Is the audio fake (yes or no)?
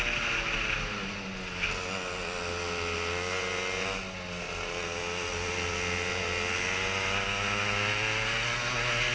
no